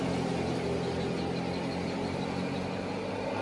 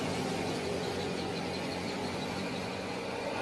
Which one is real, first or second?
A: first